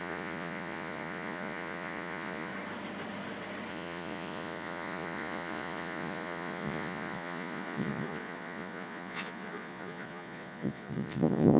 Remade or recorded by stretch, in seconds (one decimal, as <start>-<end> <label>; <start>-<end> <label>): 0.0-2.5 remade; 2.5-3.7 recorded; 3.7-11.6 remade